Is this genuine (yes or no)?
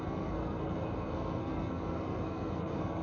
no